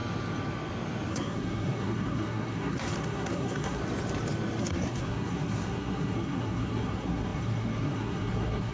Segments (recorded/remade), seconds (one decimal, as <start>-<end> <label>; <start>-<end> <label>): 0.0-1.1 recorded; 1.1-3.8 remade; 3.8-4.6 recorded; 4.6-8.7 remade